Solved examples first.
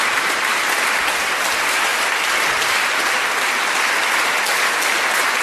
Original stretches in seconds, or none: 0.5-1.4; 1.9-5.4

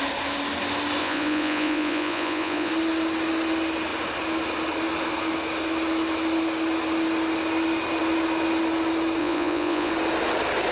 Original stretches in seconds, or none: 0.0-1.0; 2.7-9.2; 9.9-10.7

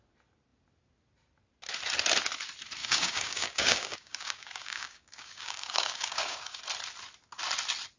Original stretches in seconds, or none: 0.0-2.8; 6.6-8.0

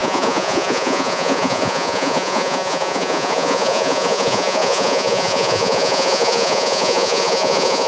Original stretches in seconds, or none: none

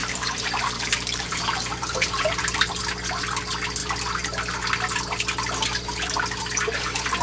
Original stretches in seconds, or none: 2.8-7.2

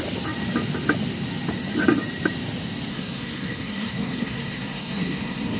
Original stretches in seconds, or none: 0.0-2.9